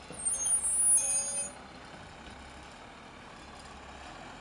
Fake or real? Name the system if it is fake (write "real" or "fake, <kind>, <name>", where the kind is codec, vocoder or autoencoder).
real